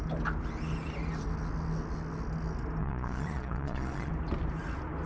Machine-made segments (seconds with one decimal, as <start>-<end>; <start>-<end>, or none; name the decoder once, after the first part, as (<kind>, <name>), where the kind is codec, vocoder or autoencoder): 2.8-4.1 (vocoder, Vocos)